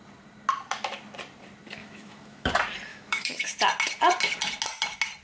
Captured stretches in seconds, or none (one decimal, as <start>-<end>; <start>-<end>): 0.0-1.8; 2.5-2.9; 3.5-5.2